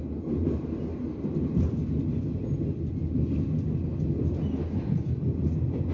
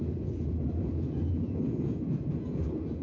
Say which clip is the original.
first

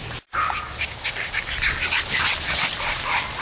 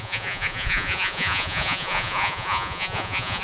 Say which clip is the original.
first